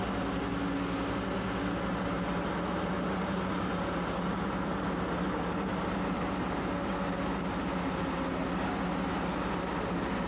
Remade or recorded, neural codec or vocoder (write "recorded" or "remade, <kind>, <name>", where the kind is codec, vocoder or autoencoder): recorded